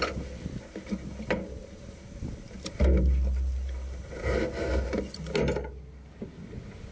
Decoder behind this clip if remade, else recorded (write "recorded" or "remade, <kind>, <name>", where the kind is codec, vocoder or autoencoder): recorded